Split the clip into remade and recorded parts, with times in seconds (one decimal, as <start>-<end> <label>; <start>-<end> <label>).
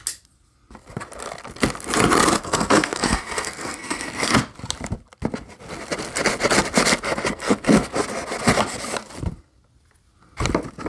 0.0-2.4 recorded; 2.4-4.4 remade; 4.4-7.3 recorded; 7.3-7.9 remade; 7.9-10.9 recorded